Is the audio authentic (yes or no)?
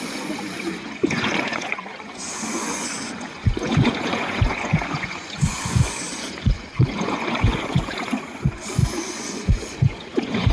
no